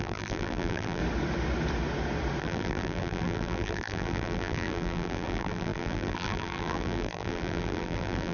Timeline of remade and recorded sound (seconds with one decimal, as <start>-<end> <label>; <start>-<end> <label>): 0.0-1.0 remade; 1.0-2.4 recorded; 2.4-8.3 remade

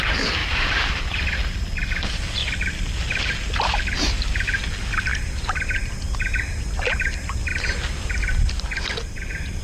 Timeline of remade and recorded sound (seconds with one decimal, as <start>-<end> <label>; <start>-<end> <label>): 0.0-9.6 recorded

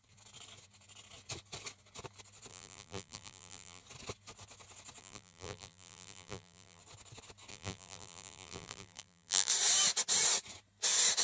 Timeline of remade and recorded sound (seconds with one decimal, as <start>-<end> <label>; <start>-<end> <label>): 0.0-2.5 recorded; 2.5-3.8 remade; 3.8-5.0 recorded; 5.0-6.8 remade; 6.8-7.5 recorded; 7.5-9.5 remade; 9.5-11.2 recorded

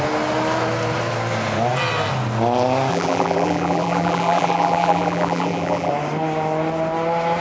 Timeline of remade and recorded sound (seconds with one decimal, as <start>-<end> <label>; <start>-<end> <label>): 0.0-2.9 recorded; 2.9-5.9 remade; 5.9-7.4 recorded